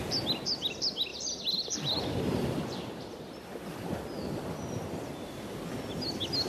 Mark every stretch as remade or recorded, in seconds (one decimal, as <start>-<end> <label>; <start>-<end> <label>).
0.0-1.1 recorded; 1.1-5.0 remade; 5.0-6.5 recorded